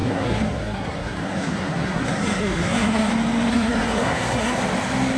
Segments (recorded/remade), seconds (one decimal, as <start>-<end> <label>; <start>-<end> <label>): 0.0-3.1 remade; 3.1-3.5 recorded; 3.5-4.6 remade; 4.6-5.2 recorded